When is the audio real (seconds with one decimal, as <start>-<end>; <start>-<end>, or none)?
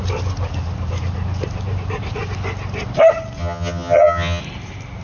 0.0-3.4; 4.4-5.0